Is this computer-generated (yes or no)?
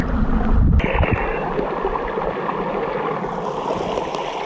no